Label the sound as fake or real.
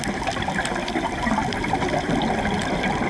fake